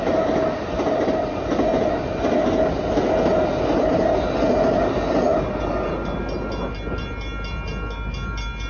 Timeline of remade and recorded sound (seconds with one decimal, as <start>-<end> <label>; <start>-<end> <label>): 0.0-8.7 recorded